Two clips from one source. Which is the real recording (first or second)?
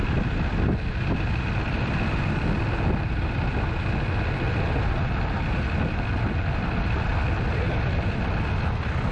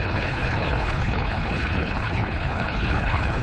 first